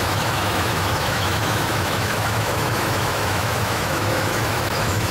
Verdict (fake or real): fake